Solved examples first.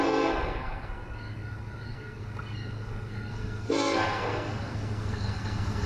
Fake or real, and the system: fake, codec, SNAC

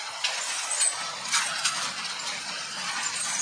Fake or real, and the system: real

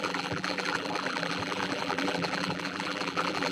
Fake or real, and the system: fake, vocoder, BigVGAN v2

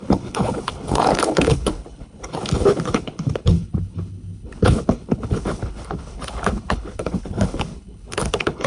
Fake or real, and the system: fake, codec, HILCodec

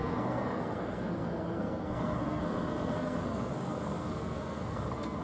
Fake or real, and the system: fake, codec, SNAC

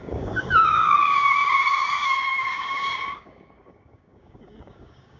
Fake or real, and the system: fake, codec, DAC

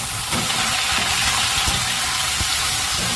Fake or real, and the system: fake, vocoder, BigVGAN v2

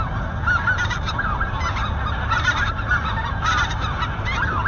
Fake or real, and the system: real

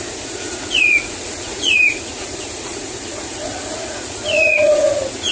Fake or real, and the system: fake, vocoder, Vocos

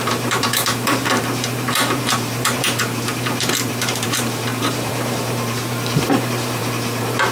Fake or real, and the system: fake, vocoder, BigVGAN v2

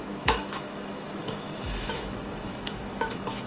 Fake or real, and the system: fake, autoencoder, DAC-VAE